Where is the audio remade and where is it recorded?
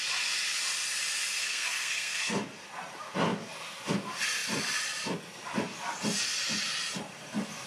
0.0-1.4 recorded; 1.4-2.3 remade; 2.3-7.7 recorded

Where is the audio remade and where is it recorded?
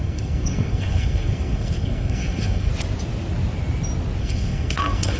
0.0-2.7 remade; 2.7-4.2 recorded; 4.2-5.2 remade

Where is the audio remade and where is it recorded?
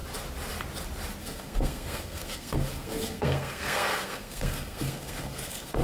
0.0-1.2 recorded; 1.2-5.8 remade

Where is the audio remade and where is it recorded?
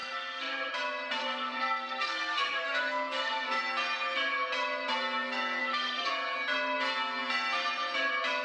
0.0-0.7 remade; 0.7-1.2 recorded; 1.2-3.6 remade; 3.6-5.6 recorded; 5.6-6.1 remade; 6.1-8.4 recorded